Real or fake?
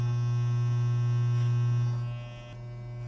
real